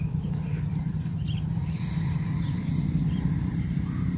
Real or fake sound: fake